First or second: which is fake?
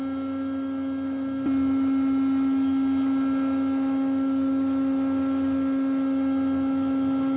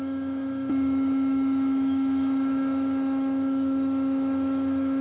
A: second